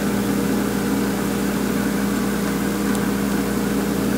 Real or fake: real